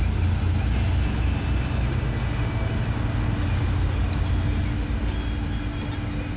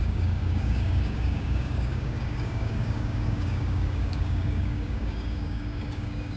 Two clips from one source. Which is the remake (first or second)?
second